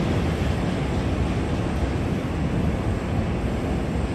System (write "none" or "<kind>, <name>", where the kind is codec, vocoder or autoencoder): none